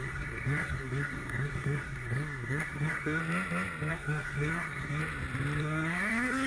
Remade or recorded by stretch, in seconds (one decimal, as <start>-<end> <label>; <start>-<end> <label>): 0.0-3.2 remade; 3.2-3.9 recorded; 3.9-5.0 remade; 5.0-5.6 recorded; 5.6-6.5 remade